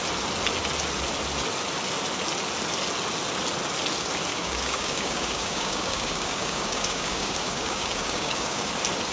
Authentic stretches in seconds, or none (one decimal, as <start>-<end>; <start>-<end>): 0.0-4.3; 8.7-9.1